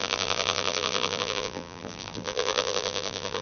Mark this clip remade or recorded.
remade